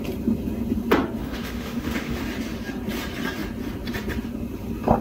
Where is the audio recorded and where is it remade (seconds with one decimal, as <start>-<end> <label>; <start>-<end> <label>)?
0.0-1.2 recorded; 1.2-2.2 remade; 2.2-5.0 recorded